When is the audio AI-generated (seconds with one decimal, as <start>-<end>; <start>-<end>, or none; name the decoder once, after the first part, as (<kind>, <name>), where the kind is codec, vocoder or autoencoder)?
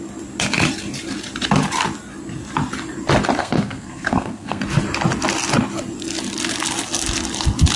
3.4-4.6 (codec, SNAC)